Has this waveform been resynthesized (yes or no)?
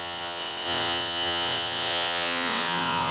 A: yes